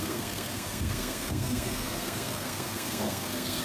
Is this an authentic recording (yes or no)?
no